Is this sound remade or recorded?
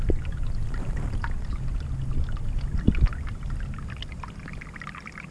recorded